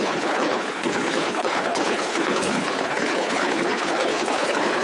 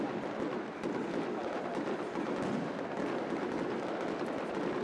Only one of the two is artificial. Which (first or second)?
first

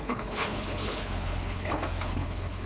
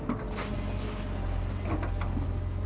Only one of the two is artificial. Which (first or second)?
first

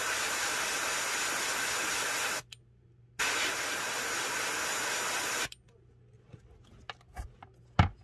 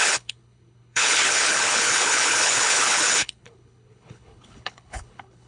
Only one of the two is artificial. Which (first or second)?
second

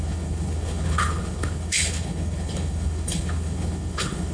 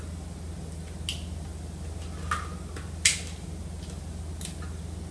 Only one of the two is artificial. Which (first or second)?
first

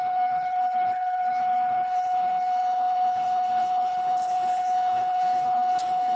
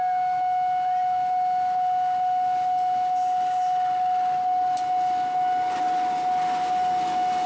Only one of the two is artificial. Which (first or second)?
first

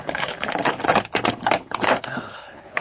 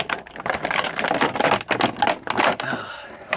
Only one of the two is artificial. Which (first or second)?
first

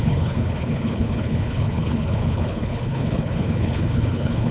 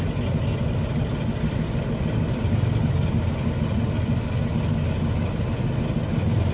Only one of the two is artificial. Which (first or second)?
first